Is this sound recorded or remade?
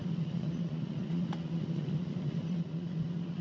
remade